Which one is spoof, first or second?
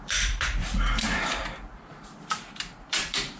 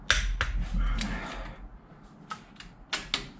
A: first